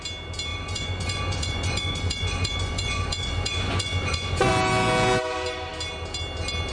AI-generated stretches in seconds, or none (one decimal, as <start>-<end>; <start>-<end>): 0.5-4.5